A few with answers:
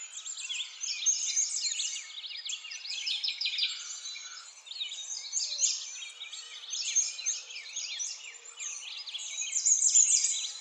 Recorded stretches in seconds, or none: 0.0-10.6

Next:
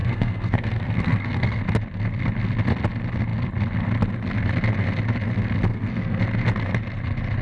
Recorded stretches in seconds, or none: 1.6-5.7; 6.2-7.4

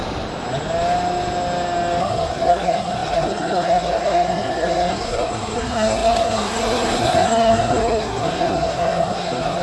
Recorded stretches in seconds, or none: 0.0-2.0

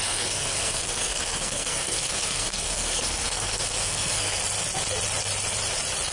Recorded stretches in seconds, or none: 4.4-6.1

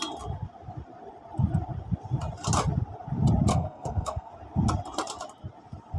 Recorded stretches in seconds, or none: 0.0-3.5; 4.3-6.0

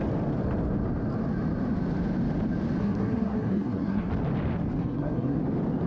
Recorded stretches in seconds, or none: 0.0-2.8; 4.1-4.8; 5.4-5.9